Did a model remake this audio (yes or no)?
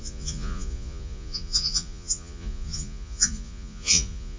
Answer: yes